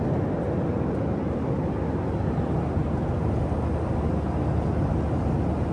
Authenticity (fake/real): real